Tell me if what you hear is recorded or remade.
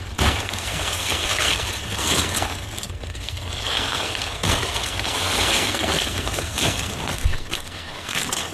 remade